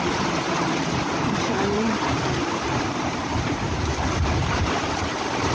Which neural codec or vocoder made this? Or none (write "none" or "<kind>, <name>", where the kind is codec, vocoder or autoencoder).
vocoder, BigVGAN v2